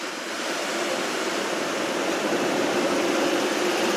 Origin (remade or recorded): remade